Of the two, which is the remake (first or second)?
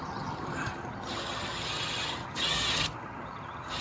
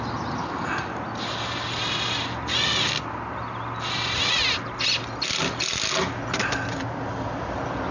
first